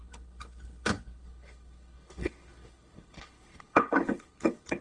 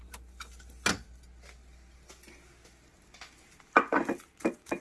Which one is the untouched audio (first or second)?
second